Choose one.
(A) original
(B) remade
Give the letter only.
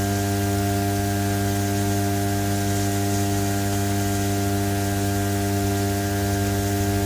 A